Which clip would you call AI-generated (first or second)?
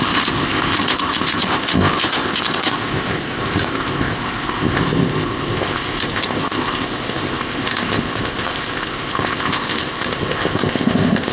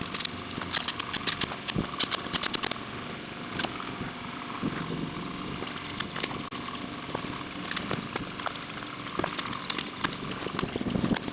first